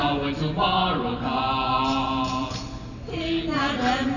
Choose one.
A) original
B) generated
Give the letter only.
A